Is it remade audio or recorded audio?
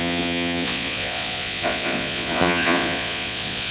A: remade